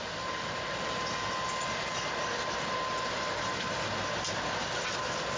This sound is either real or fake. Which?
real